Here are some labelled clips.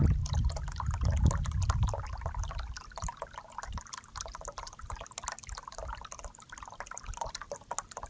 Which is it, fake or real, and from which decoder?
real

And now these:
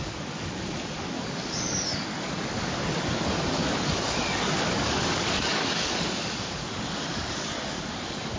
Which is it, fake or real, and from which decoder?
fake, codec, DAC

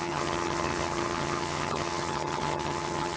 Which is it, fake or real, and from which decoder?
fake, vocoder, HiFi-GAN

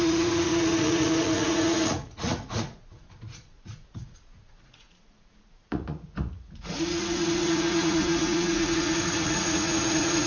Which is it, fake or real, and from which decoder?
fake, vocoder, Vocos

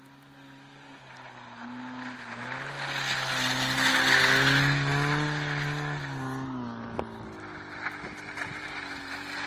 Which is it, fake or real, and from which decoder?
real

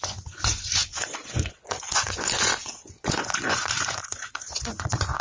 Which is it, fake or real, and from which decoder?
fake, vocoder, Vocos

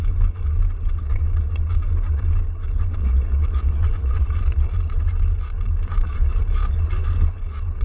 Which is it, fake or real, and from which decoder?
fake, vocoder, Vocos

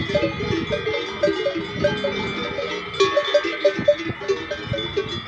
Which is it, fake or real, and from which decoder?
real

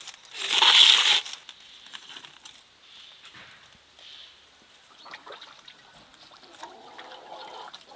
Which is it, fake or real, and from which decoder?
real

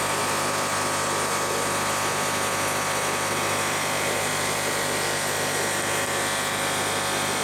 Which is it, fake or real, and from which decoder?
real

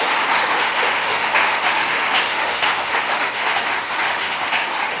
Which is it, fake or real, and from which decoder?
fake, autoencoder, DAC-VAE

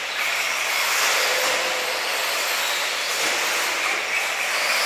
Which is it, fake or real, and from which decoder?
real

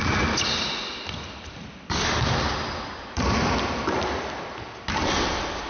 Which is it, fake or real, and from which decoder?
real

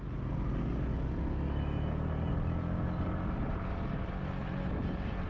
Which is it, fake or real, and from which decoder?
real